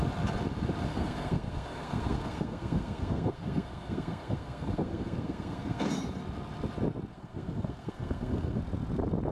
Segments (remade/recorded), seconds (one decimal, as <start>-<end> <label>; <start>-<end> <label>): 0.0-0.9 recorded; 0.9-5.9 remade; 5.9-7.1 recorded; 7.1-8.6 remade; 8.6-9.3 recorded

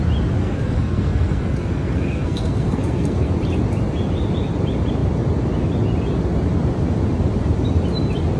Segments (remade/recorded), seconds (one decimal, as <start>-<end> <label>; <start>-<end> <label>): 0.0-0.4 recorded; 0.4-3.3 remade; 3.3-8.4 recorded

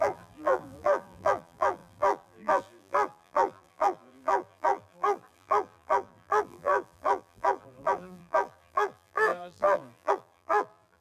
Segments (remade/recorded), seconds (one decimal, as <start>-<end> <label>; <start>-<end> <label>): 0.0-11.0 remade

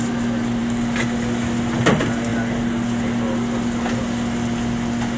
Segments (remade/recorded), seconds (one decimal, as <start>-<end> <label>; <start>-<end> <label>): 0.0-5.2 recorded